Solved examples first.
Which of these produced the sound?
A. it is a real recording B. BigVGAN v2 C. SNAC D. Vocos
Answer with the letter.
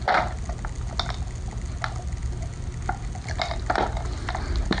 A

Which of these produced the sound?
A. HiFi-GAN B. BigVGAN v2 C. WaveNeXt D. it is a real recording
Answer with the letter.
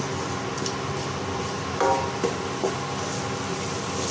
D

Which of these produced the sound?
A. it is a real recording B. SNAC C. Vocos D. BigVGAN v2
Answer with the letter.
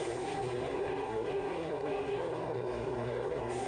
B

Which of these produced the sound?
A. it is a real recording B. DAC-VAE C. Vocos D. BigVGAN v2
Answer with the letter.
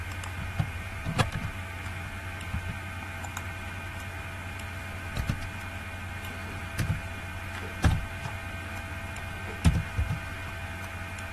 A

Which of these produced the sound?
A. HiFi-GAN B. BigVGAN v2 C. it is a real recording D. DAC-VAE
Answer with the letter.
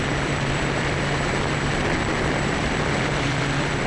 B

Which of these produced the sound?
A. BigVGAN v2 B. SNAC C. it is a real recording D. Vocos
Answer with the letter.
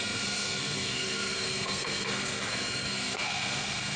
B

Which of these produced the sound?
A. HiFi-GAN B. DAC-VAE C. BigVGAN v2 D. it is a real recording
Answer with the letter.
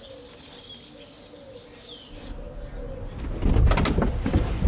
D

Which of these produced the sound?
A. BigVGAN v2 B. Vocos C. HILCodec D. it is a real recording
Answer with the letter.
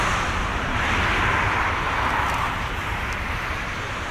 A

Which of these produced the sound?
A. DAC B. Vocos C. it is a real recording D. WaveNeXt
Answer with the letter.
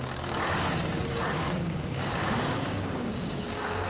A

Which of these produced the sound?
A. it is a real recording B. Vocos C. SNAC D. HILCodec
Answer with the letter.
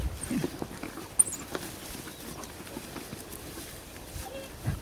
A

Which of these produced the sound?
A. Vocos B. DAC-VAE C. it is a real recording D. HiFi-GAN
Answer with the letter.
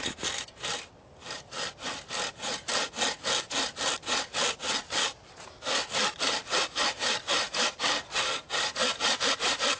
C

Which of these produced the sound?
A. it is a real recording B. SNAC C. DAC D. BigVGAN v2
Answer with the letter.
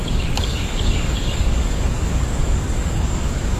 C